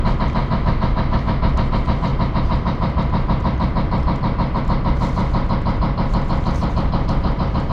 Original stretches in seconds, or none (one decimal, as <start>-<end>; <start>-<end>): 0.0-0.4; 1.5-7.7